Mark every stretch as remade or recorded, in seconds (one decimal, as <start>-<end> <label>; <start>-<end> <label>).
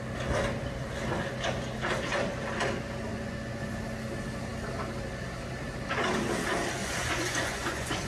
0.0-3.1 recorded; 3.1-3.7 remade; 3.7-6.8 recorded; 6.8-8.1 remade